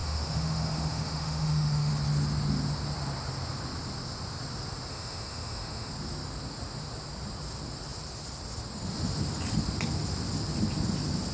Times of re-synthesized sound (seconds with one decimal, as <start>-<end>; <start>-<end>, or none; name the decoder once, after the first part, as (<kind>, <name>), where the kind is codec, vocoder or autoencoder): 0.0-1.9 (autoencoder, DAC-VAE); 4.9-5.9